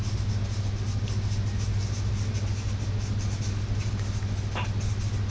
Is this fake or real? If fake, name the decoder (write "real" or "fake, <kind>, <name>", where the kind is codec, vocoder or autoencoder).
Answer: real